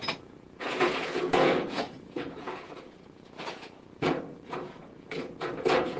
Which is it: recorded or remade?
remade